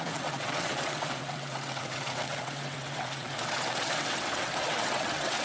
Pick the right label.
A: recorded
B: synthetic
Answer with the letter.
B